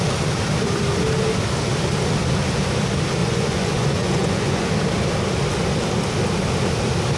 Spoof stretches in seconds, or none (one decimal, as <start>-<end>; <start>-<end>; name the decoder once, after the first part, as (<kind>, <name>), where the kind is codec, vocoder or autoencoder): 3.2-4.7 (vocoder, Vocos)